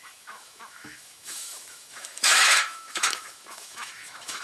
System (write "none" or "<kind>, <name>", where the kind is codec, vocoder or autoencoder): autoencoder, DAC-VAE